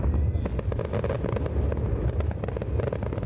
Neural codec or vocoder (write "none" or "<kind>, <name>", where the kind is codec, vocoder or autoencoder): none